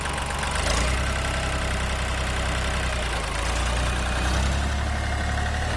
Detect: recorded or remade recorded